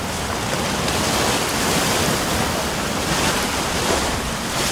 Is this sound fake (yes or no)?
no